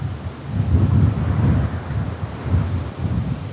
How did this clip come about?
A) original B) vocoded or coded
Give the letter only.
A